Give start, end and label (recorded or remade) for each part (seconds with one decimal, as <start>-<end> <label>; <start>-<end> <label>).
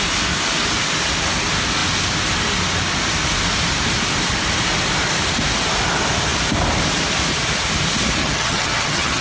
0.0-8.2 recorded; 8.2-9.2 remade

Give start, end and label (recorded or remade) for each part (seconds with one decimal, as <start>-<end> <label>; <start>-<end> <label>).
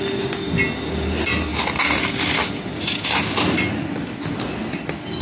0.0-5.2 recorded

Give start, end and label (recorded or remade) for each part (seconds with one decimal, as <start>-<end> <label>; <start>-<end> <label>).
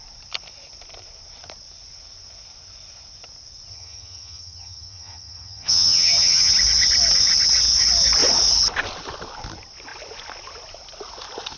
0.0-3.7 recorded; 3.7-6.5 remade; 6.5-11.6 recorded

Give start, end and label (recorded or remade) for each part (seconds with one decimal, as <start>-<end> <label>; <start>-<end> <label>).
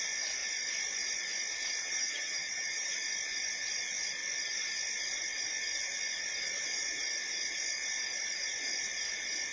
0.0-1.8 recorded; 1.8-2.9 remade; 2.9-9.5 recorded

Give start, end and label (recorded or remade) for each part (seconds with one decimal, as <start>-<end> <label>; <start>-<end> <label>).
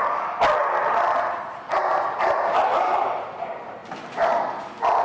0.0-5.0 recorded